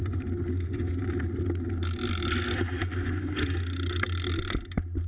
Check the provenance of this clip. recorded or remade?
recorded